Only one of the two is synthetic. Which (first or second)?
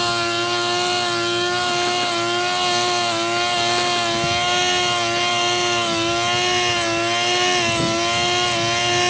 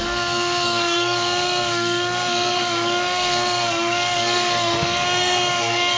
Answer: second